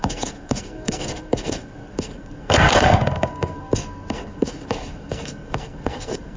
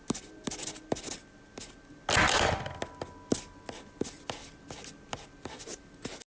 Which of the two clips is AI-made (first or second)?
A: first